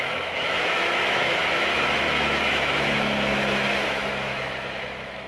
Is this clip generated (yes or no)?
yes